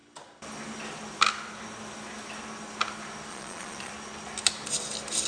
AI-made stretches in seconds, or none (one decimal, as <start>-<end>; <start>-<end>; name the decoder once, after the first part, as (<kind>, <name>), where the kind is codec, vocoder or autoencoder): 3.3-3.9 (vocoder, Vocos)